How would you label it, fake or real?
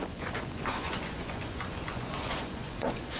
fake